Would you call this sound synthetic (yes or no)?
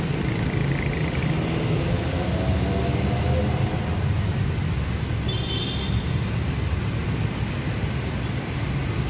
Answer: no